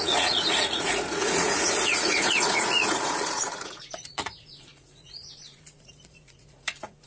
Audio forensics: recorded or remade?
remade